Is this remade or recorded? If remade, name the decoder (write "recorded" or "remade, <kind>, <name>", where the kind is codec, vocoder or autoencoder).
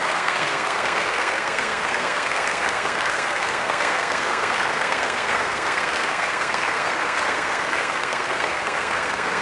remade, codec, SNAC